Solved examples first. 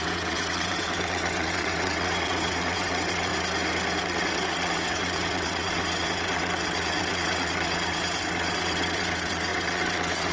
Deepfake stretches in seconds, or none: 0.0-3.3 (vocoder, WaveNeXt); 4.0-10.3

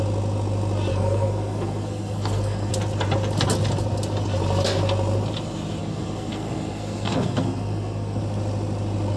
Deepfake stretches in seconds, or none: 0.9-2.7 (codec, SNAC); 5.8-8.2

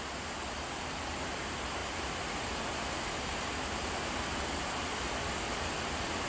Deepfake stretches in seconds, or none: none